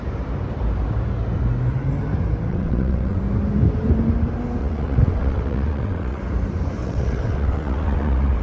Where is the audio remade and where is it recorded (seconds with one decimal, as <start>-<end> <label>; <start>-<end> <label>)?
0.0-2.5 recorded; 2.5-3.2 remade; 3.2-4.6 recorded; 4.6-6.2 remade; 6.2-6.8 recorded; 6.8-8.4 remade

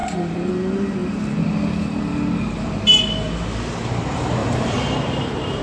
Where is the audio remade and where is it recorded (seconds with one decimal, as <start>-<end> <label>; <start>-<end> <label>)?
0.0-0.5 remade; 0.5-4.4 recorded; 4.4-5.6 remade

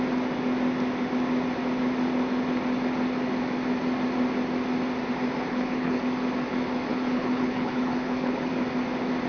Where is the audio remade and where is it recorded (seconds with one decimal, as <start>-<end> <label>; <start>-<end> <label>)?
0.0-5.5 recorded; 5.5-6.0 remade; 6.0-6.9 recorded; 6.9-8.5 remade; 8.5-9.3 recorded

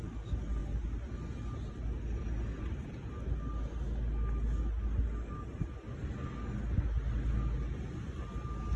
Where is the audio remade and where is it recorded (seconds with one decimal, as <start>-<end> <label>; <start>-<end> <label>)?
0.0-8.8 recorded

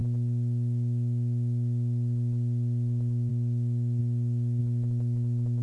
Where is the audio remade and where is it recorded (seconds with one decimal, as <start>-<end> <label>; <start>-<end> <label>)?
0.0-5.6 recorded